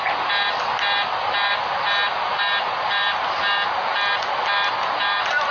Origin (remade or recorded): recorded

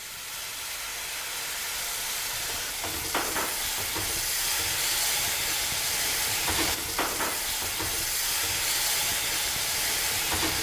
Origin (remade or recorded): remade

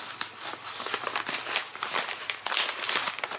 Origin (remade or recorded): recorded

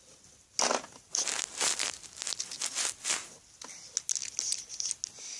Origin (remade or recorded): recorded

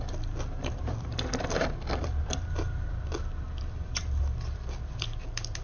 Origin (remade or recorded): remade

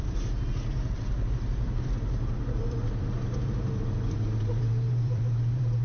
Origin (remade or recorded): remade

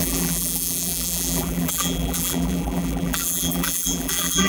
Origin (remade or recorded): remade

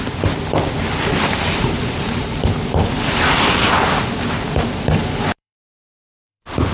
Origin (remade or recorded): remade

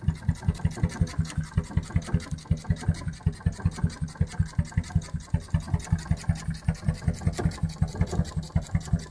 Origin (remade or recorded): recorded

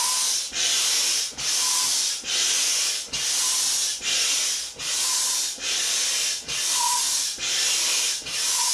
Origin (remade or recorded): recorded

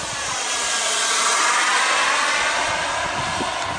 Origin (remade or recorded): remade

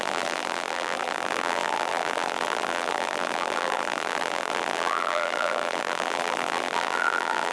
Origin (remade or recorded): remade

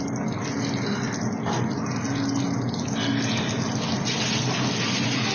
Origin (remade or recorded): recorded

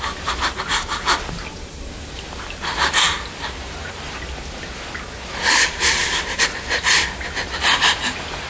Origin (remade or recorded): recorded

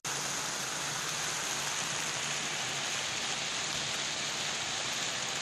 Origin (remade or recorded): recorded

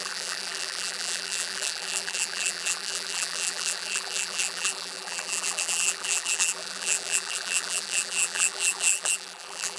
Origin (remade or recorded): remade